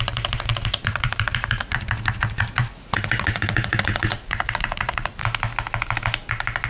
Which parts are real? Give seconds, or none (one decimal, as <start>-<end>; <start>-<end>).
5.2-6.7